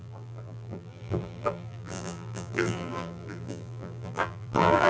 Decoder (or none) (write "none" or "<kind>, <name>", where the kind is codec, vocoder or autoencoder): vocoder, BigVGAN v2